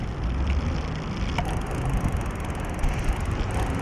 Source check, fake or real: real